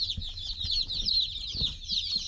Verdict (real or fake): real